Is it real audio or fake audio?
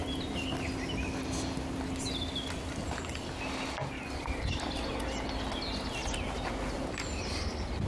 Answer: real